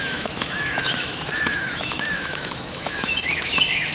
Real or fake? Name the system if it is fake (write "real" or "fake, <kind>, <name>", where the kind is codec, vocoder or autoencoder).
fake, autoencoder, DAC-VAE